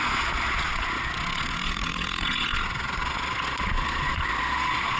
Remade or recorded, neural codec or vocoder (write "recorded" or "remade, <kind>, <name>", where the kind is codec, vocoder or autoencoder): remade, vocoder, Vocos